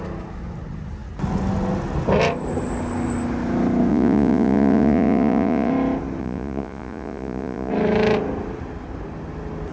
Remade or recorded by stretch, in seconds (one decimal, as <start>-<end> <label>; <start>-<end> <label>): 0.0-3.9 recorded; 3.9-5.7 remade; 5.7-6.2 recorded; 6.2-7.7 remade; 7.7-9.7 recorded